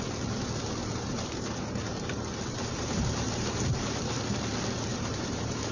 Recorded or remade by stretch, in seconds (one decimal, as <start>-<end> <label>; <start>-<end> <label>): 0.0-0.8 recorded; 0.8-4.2 remade; 4.2-4.9 recorded; 4.9-5.7 remade